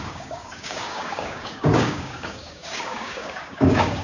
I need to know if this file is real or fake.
fake